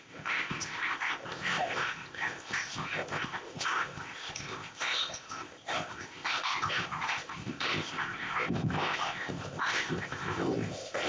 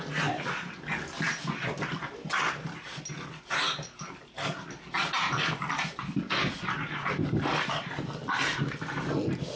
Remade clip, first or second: first